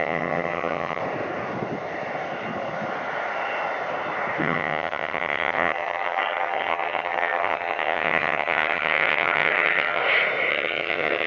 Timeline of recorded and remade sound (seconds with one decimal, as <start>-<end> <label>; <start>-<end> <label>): 0.0-1.0 remade; 1.0-4.4 recorded; 4.4-10.0 remade; 10.0-10.5 recorded; 10.5-11.3 remade